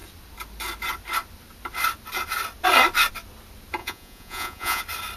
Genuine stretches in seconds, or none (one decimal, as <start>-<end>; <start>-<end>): 0.0-3.8; 4.8-5.2